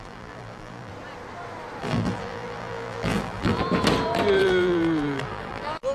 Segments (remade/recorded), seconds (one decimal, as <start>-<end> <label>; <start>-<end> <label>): 0.0-0.9 remade; 0.9-1.8 recorded; 1.8-3.6 remade; 3.6-4.4 recorded; 4.4-5.9 remade